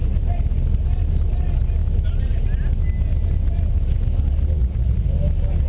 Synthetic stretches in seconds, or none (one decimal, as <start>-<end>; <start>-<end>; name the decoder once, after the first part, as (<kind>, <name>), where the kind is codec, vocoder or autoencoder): 4.6-5.1 (vocoder, Vocos)